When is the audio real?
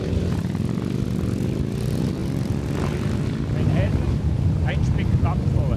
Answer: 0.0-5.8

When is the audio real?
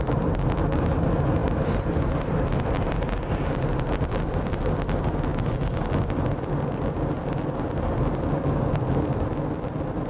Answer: 0.0-1.4; 2.8-10.1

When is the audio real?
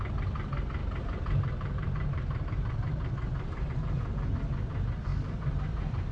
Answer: 0.0-0.8; 3.7-5.1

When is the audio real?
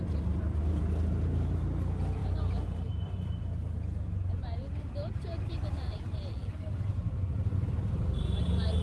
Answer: 0.0-8.8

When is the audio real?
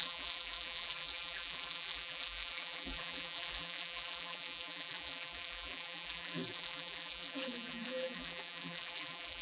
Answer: none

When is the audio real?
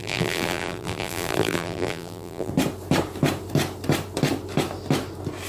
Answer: 2.5-5.5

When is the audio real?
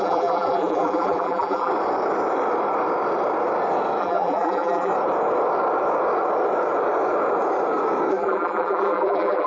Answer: 1.7-4.0; 4.9-8.1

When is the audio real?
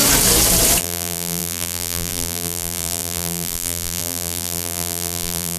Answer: 0.0-0.8